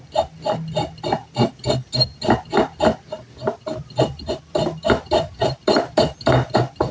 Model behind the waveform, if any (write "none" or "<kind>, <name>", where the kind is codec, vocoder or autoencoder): none